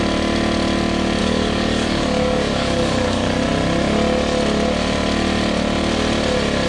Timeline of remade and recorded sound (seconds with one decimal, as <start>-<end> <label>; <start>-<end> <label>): 0.0-1.2 recorded; 1.2-3.4 remade; 3.4-6.7 recorded